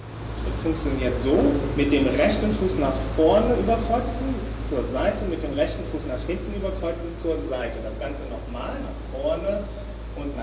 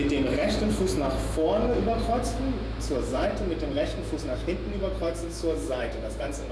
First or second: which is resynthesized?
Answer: second